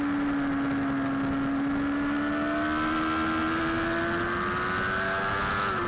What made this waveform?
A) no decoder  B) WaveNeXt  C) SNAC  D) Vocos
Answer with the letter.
A